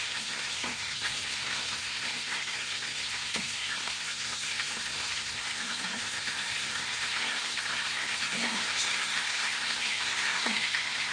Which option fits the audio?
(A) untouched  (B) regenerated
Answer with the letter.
B